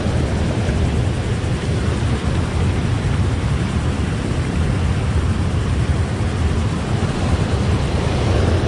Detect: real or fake real